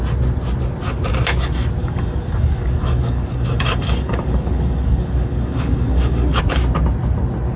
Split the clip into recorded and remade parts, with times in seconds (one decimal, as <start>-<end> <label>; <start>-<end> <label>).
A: 0.0-1.8 recorded; 1.8-6.4 remade; 6.4-7.6 recorded